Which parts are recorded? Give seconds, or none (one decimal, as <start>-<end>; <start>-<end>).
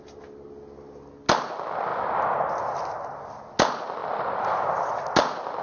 0.0-4.0; 5.0-5.6